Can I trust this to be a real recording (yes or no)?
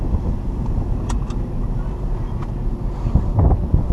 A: yes